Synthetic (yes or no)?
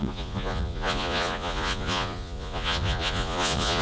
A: yes